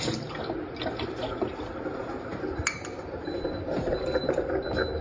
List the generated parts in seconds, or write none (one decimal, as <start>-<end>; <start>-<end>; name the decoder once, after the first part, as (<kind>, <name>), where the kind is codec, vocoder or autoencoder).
none